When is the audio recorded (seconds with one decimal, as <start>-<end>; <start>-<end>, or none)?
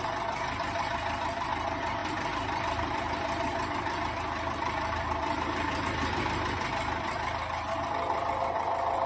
0.0-2.0; 6.2-9.1